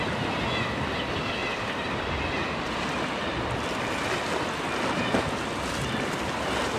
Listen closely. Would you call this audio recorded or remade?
recorded